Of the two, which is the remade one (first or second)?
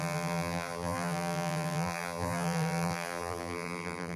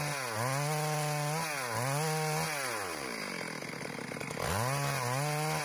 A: first